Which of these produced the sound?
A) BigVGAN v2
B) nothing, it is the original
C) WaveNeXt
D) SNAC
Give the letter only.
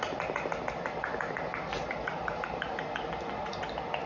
B